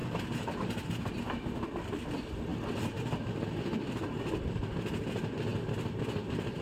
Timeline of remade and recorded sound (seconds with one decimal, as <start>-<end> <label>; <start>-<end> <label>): 0.0-6.6 recorded